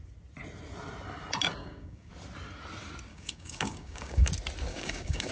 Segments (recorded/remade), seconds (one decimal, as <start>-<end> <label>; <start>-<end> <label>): 0.0-1.6 recorded; 1.6-2.1 remade; 2.1-3.1 recorded; 3.1-4.3 remade; 4.3-4.7 recorded; 4.7-5.3 remade